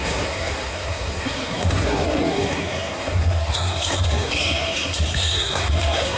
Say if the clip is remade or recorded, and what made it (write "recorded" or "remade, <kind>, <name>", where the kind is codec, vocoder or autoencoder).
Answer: remade, codec, SNAC